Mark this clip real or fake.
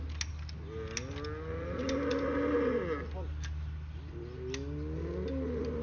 real